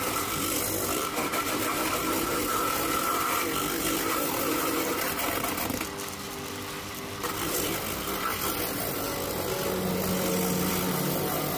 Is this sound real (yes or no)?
yes